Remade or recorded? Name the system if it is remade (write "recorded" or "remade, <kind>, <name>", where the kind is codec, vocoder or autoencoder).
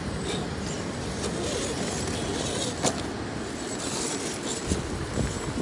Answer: recorded